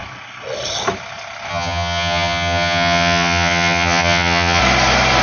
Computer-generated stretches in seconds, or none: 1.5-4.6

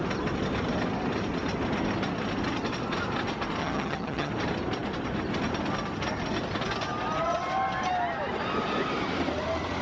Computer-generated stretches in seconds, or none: 3.6-4.3